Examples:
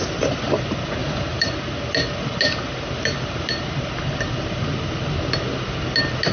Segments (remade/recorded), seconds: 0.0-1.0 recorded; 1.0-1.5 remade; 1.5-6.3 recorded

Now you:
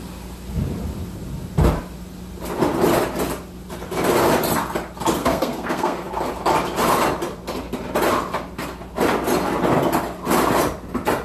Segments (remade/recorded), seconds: 0.0-5.2 recorded; 5.2-6.1 remade; 6.1-11.2 recorded